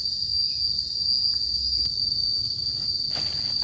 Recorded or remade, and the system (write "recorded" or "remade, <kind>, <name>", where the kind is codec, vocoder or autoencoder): recorded